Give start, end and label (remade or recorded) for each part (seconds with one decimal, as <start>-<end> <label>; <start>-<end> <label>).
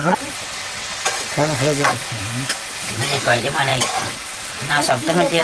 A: 0.0-2.2 remade; 2.2-3.7 recorded; 3.7-5.4 remade